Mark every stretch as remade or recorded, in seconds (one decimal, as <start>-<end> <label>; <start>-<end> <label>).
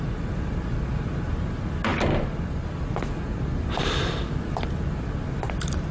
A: 0.0-5.9 recorded